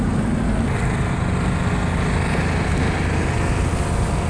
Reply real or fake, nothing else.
real